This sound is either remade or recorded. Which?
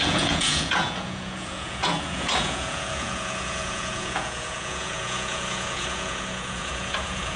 remade